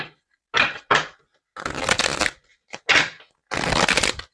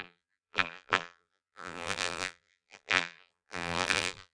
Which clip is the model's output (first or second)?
second